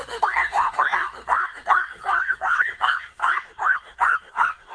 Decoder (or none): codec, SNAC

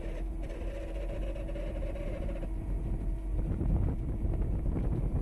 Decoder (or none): vocoder, BigVGAN v2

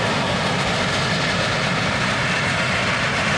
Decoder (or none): none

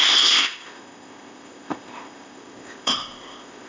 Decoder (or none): codec, ZipCodec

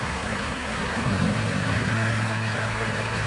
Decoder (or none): codec, SNAC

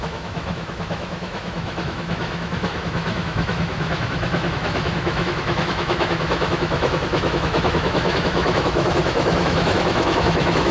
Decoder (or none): autoencoder, DAC-VAE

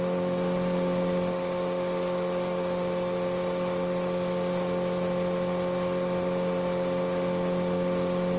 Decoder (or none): none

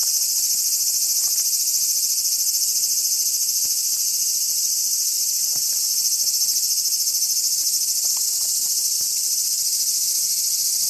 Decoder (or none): none